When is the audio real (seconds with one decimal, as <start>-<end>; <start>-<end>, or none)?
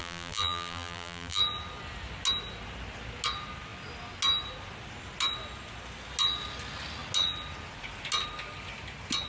1.4-9.3